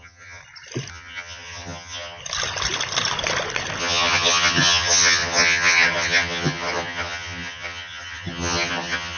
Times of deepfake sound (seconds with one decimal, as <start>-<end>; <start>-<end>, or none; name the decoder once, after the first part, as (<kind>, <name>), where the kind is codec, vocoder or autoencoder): 0.0-0.4 (vocoder, HiFi-GAN); 0.9-2.2; 3.8-9.2